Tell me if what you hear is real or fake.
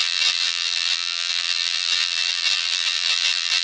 fake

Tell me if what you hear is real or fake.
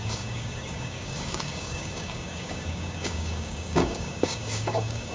fake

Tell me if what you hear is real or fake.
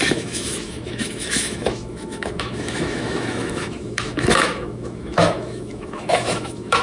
fake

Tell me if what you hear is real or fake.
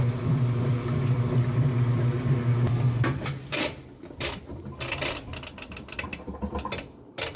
fake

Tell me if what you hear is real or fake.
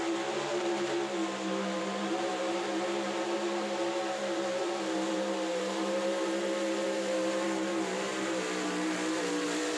fake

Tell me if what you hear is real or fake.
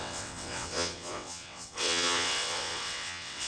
fake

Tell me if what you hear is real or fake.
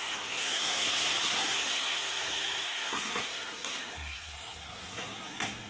fake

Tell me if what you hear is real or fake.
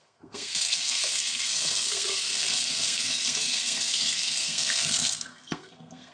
fake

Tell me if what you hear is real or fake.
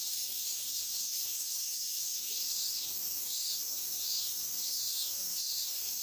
fake